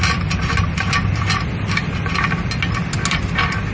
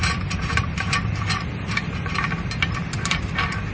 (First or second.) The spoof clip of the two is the second